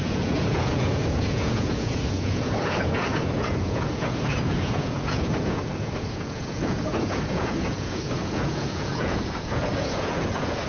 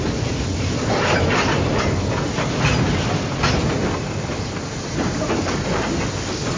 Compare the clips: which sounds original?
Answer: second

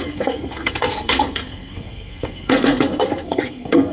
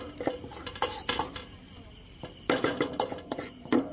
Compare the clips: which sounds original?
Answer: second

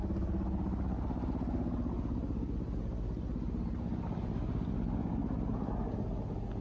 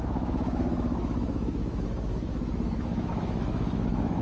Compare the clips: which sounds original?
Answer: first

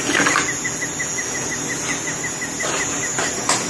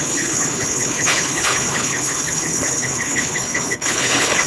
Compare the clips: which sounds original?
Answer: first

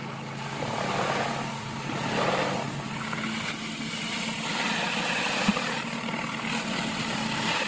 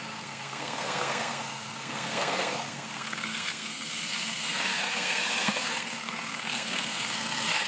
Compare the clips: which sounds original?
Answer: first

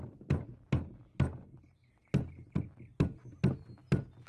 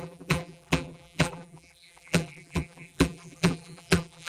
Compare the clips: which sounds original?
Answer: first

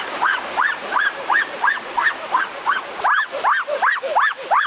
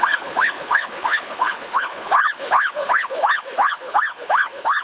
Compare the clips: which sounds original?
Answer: first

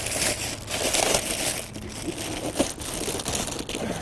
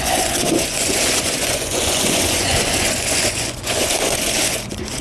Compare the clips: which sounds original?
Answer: first